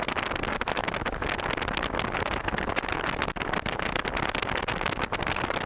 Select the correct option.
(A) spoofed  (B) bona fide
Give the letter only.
B